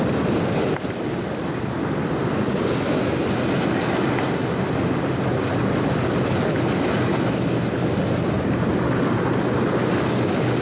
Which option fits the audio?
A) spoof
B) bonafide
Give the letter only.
B